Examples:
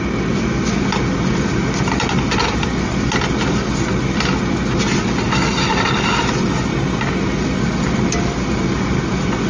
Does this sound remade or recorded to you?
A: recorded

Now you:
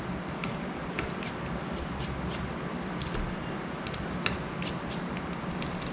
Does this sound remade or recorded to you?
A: recorded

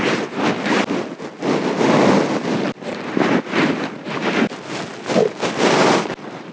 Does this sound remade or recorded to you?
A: recorded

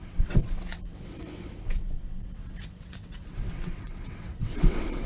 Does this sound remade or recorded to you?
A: remade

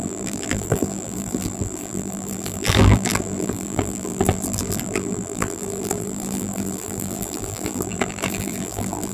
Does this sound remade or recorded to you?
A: remade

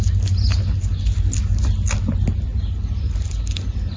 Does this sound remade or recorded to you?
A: recorded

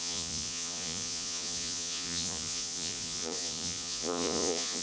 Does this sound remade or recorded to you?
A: remade